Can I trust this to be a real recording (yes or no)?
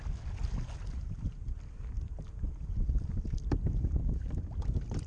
yes